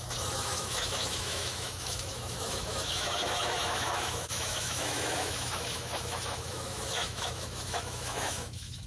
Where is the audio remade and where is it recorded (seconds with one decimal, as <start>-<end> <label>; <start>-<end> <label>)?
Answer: 0.0-8.9 remade